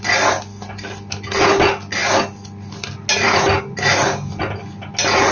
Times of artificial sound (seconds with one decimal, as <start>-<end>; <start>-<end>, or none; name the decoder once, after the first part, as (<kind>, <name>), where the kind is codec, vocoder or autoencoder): none